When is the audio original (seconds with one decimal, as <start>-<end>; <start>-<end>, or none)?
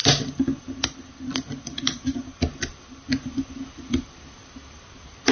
0.0-5.3